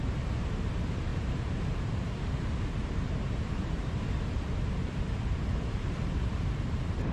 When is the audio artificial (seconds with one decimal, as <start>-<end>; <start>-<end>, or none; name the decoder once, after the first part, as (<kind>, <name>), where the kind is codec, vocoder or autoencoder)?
0.0-7.1 (vocoder, BigVGAN v2)